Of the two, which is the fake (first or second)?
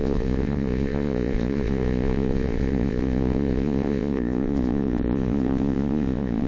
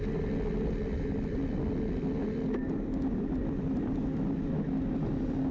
first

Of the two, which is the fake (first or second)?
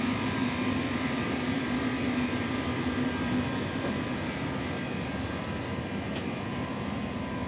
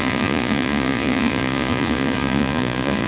second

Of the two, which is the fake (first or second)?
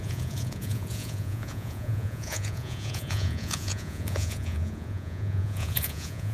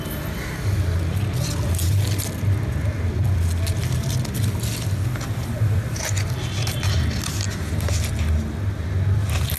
first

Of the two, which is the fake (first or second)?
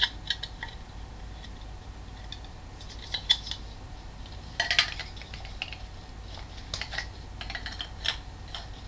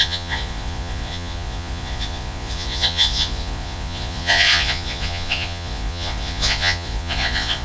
second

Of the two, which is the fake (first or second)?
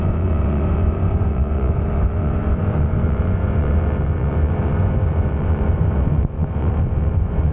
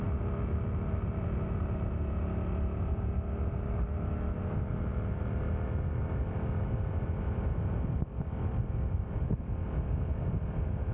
first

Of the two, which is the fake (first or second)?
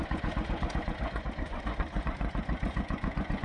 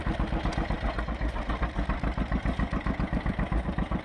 first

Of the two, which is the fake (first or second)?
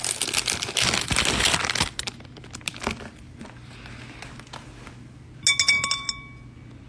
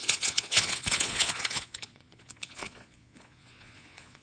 second